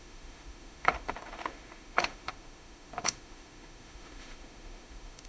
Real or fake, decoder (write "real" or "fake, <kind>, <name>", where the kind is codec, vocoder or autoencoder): fake, autoencoder, DAC-VAE